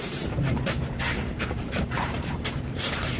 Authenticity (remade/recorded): remade